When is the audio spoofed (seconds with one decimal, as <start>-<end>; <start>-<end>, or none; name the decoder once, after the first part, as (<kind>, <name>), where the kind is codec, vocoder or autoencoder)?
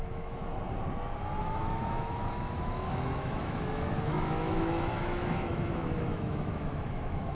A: 0.0-0.4 (autoencoder, DAC-VAE); 1.4-7.3